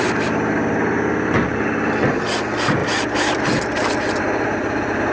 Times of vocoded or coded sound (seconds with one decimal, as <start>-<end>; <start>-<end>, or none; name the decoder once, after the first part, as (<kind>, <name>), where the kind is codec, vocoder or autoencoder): none